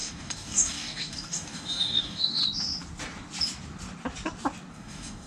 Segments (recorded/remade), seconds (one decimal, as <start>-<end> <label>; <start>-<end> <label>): 0.0-2.4 remade; 2.4-4.7 recorded; 4.7-5.3 remade